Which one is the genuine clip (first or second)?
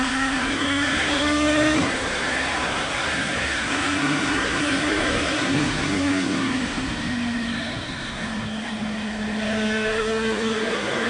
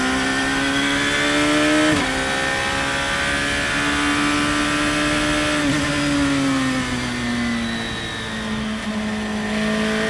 second